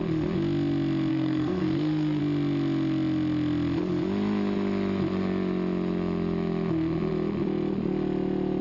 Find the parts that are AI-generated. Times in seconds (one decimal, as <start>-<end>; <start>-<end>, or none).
1.1-2.2